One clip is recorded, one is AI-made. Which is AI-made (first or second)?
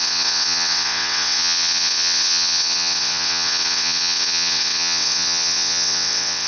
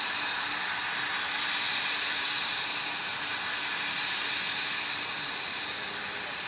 first